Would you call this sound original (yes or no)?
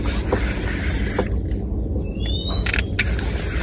yes